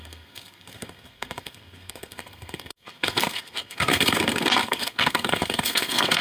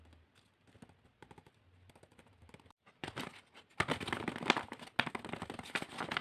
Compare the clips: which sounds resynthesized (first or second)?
first